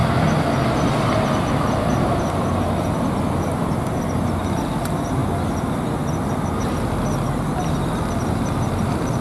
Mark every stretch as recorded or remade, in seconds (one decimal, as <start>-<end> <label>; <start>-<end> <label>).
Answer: 0.0-9.2 recorded